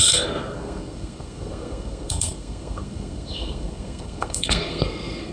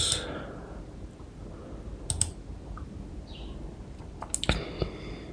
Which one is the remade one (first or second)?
first